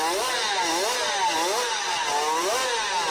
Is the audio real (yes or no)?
yes